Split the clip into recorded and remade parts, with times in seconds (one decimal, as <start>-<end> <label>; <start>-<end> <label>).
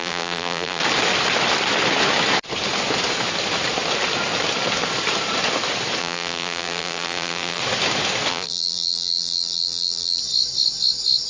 0.0-0.8 remade; 0.8-6.0 recorded; 6.0-7.6 remade; 7.6-8.3 recorded; 8.3-10.2 remade; 10.2-11.3 recorded